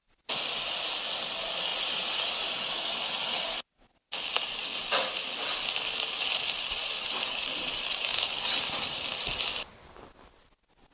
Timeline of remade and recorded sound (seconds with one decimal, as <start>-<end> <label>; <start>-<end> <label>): 0.0-4.6 recorded; 4.6-9.2 remade; 9.2-10.9 recorded